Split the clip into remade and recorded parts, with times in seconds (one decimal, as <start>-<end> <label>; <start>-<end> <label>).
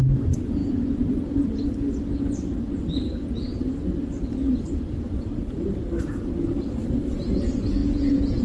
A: 0.0-7.8 recorded; 7.8-8.4 remade